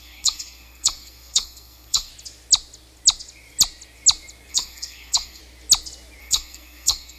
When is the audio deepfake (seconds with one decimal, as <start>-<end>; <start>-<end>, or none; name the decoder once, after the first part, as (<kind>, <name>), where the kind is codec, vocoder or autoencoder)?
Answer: 0.0-2.1 (codec, SNAC); 4.5-5.4; 6.2-7.2